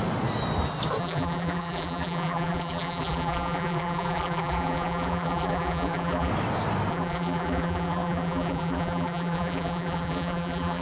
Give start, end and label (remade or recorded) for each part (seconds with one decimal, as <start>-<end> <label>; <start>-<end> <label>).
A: 0.0-1.0 recorded; 1.0-6.3 remade; 6.3-6.9 recorded; 6.9-10.8 remade